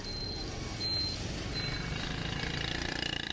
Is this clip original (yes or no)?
yes